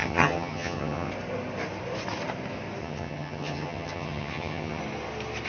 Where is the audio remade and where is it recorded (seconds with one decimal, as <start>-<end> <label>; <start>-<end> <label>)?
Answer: 0.0-1.1 remade; 1.1-2.8 recorded; 2.8-4.8 remade; 4.8-5.5 recorded